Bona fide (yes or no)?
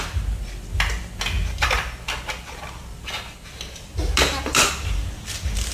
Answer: yes